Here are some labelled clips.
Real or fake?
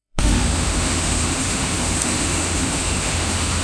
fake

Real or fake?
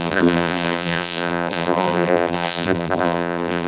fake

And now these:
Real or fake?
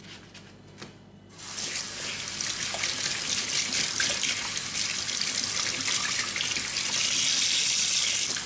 real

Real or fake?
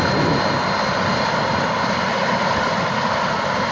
real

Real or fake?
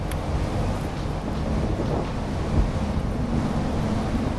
real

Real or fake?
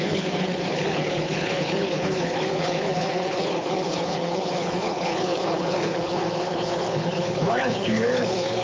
fake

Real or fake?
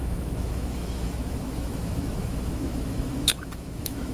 fake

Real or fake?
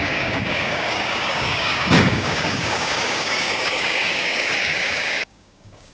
fake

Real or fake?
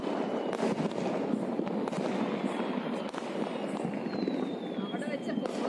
real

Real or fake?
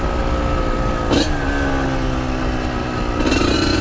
real